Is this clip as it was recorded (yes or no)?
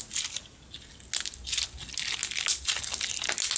yes